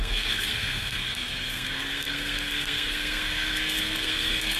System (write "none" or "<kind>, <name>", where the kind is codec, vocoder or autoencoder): codec, SNAC